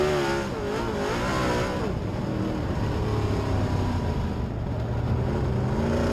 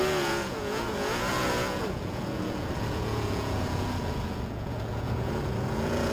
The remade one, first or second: second